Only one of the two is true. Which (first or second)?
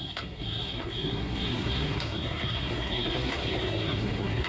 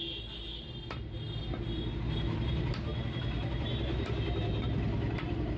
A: second